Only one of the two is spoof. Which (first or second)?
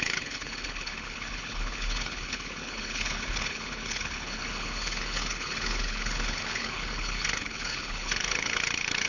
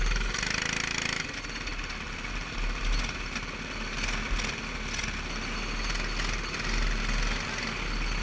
first